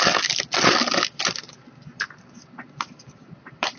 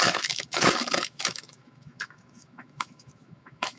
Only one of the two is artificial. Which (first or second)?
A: second